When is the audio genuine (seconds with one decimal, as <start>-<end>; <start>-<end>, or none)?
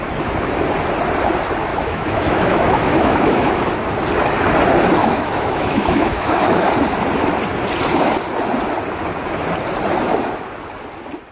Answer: 0.0-1.7; 3.5-5.0; 6.7-11.3